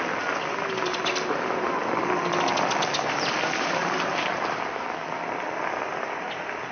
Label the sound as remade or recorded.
recorded